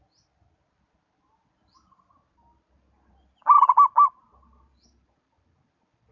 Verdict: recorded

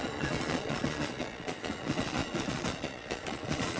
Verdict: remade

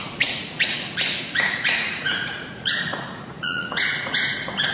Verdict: remade